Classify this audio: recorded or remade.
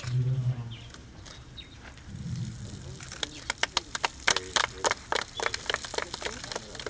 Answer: recorded